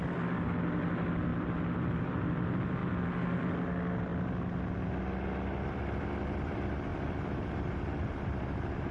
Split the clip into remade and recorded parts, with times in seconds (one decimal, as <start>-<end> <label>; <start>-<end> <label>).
0.0-2.8 remade; 2.8-3.4 recorded; 3.4-4.1 remade; 4.1-6.2 recorded; 6.2-8.9 remade